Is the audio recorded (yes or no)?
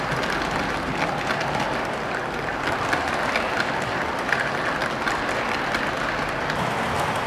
yes